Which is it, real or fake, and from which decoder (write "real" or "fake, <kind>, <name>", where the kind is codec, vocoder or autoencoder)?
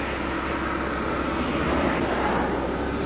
real